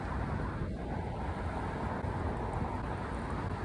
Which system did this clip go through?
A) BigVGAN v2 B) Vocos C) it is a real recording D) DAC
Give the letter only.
C